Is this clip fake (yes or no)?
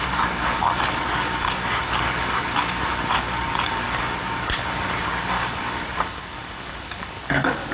yes